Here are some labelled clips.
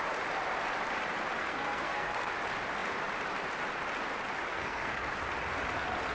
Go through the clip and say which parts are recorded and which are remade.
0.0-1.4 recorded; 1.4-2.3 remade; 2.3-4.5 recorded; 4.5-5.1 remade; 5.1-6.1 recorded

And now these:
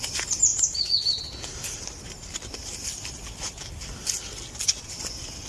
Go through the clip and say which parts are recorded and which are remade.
0.0-5.5 recorded

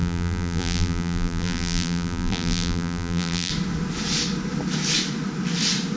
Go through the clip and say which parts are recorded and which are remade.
0.0-3.5 remade; 3.5-6.0 recorded

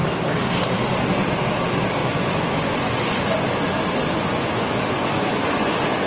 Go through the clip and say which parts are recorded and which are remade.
0.0-2.0 recorded; 2.0-6.1 remade

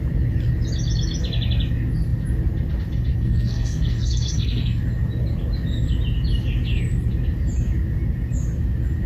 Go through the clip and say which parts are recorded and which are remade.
0.0-3.1 recorded; 3.1-4.8 remade; 4.8-9.1 recorded